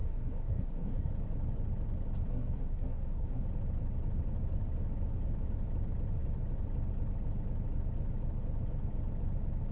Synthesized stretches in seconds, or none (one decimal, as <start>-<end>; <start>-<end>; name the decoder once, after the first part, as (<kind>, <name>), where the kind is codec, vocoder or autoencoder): 0.0-1.1 (codec, SNAC); 2.3-3.4

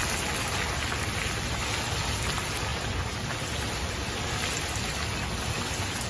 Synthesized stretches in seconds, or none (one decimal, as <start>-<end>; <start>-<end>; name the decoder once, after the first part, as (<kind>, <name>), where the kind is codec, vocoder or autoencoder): none

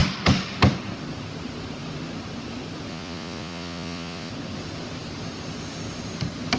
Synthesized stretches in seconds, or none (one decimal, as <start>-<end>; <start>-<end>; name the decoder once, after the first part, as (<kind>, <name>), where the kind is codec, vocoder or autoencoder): 2.9-4.3 (vocoder, Vocos)

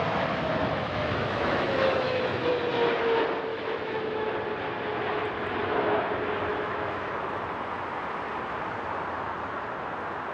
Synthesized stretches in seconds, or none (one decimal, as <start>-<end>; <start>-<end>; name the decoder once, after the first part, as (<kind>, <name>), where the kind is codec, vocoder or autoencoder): 0.5-2.5 (autoencoder, DAC-VAE); 3.5-4.3; 5.6-6.1; 6.5-7.1

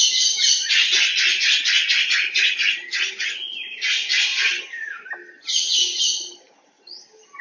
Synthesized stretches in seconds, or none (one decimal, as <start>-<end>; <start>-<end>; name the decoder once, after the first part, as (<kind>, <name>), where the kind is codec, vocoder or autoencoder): none